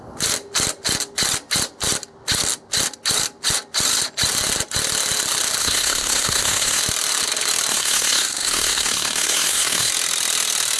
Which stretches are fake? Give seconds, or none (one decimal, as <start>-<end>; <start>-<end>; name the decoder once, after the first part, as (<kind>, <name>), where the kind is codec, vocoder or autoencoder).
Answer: 5.6-6.8 (codec, SNAC); 7.7-9.9